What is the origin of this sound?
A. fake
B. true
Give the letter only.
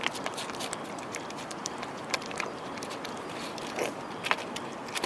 B